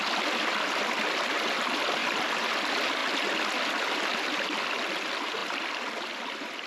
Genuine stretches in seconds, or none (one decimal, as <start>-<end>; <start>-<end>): 0.0-6.7